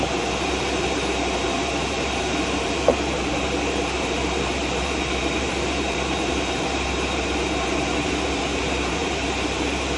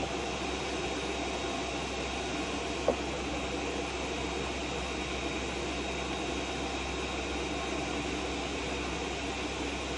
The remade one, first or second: first